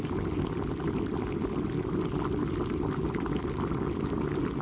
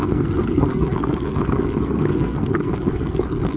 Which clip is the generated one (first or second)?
second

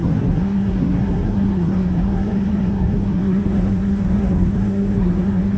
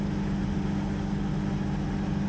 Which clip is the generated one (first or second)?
first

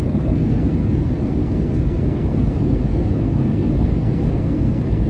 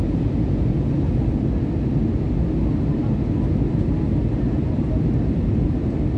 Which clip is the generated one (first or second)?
first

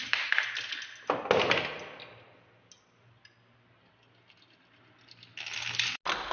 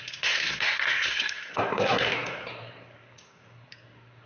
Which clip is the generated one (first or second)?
second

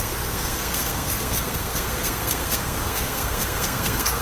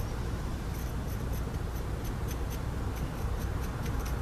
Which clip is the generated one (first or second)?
first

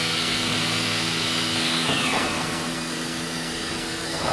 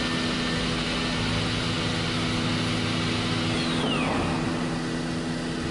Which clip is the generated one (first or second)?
first